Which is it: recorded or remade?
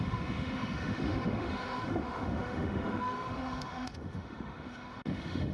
remade